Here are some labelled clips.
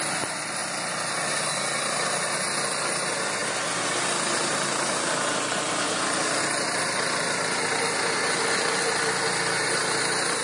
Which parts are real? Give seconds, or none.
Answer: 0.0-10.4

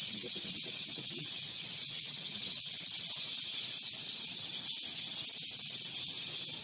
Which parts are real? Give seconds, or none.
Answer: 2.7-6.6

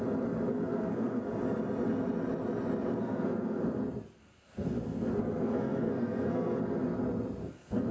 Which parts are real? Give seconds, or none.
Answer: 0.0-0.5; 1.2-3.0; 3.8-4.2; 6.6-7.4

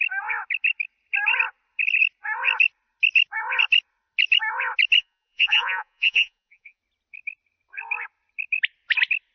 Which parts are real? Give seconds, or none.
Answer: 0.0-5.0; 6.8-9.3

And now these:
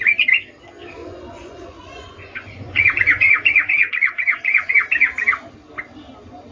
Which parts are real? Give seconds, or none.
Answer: 0.0-1.0; 4.7-6.5